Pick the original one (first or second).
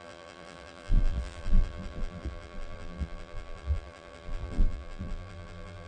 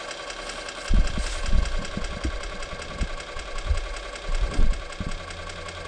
second